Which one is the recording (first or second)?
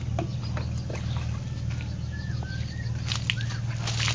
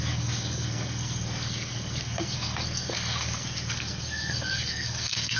first